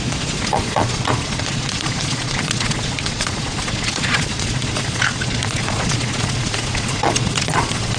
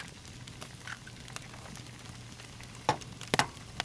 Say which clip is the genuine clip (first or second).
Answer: second